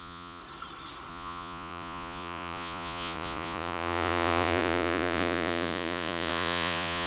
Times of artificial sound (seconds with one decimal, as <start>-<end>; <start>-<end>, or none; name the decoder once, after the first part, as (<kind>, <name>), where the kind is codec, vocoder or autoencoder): 0.0-0.4 (vocoder, Vocos); 1.1-7.1

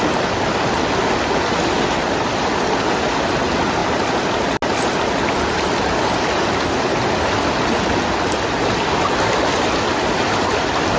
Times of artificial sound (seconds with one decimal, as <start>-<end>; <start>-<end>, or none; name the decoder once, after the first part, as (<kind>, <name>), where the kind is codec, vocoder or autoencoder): none

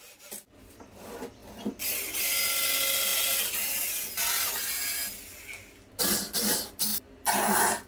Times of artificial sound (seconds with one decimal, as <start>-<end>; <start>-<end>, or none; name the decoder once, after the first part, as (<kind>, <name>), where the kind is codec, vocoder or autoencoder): none